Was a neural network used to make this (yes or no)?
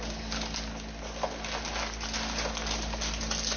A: no